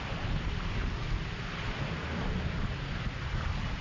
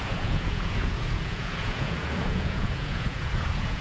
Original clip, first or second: first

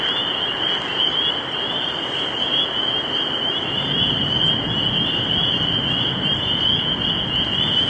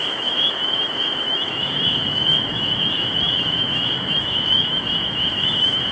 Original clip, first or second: first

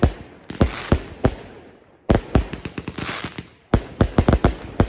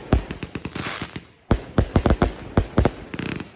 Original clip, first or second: first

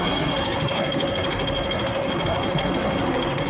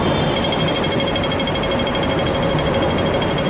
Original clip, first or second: second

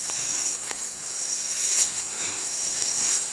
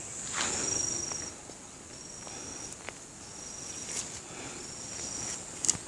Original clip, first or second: second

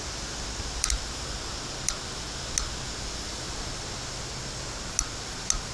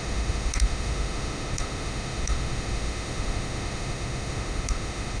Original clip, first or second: first